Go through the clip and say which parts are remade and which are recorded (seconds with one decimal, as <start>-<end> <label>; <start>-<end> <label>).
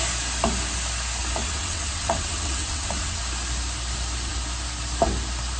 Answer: 0.0-1.4 recorded; 1.4-3.2 remade; 3.2-5.6 recorded